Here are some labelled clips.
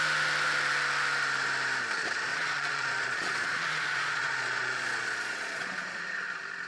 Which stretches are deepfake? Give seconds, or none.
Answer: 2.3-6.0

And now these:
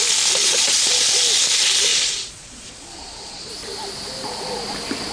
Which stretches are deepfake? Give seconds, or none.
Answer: 0.4-1.2; 1.9-3.5

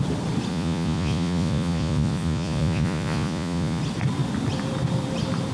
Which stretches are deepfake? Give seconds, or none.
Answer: 0.5-3.8